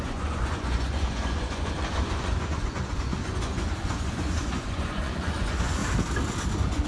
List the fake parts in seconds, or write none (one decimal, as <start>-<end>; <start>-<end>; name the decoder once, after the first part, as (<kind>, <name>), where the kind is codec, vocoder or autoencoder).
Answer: 0.0-5.8 (vocoder, Vocos); 6.5-6.9